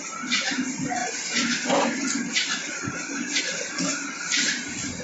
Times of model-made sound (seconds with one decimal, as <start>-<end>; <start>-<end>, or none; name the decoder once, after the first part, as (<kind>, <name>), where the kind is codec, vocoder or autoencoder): none